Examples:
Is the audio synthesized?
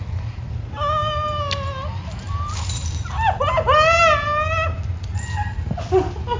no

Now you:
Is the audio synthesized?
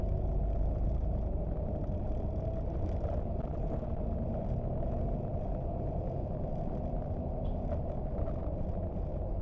no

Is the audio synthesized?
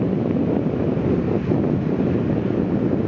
no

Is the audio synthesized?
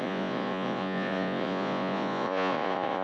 yes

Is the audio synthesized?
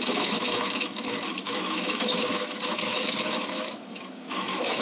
yes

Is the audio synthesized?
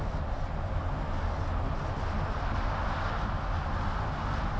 no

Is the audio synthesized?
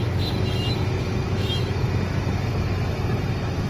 yes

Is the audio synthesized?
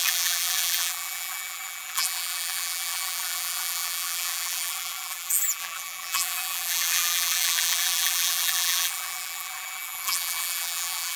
yes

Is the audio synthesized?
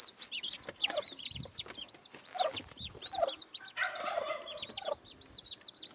no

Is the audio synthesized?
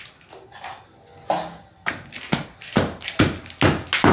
no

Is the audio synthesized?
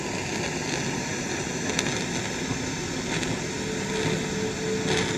no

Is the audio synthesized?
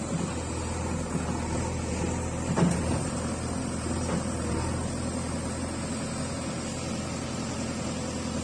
no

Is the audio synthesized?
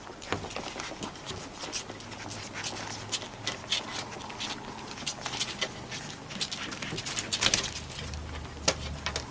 no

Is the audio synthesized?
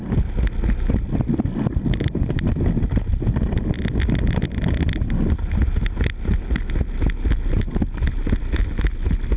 no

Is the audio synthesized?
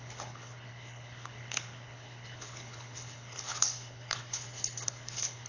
yes